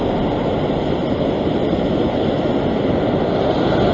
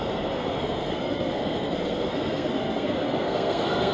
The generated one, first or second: second